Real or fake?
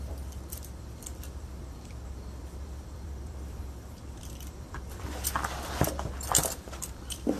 fake